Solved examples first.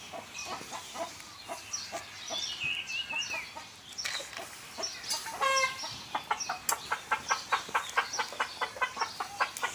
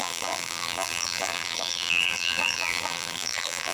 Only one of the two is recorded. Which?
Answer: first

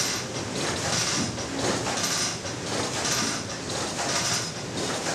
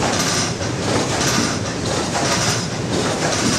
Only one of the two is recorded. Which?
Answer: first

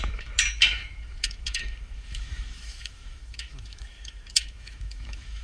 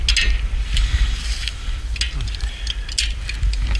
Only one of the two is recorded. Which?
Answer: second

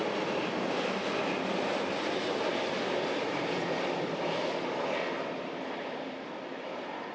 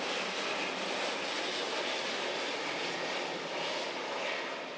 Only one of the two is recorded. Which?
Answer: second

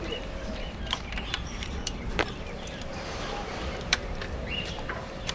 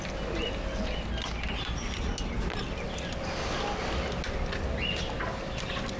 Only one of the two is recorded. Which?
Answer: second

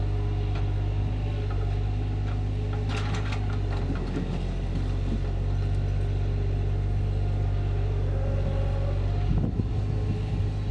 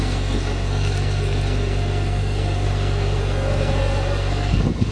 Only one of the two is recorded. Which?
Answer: first